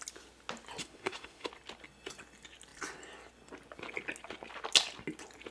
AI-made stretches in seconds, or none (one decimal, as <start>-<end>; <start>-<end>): 0.8-1.5